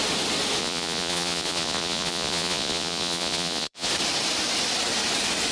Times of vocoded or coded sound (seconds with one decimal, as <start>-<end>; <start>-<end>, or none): 0.6-3.9